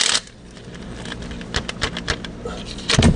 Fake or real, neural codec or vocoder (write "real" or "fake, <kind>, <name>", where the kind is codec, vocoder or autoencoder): real